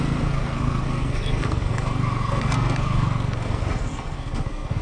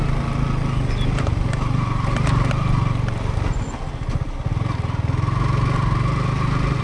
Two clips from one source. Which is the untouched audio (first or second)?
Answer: second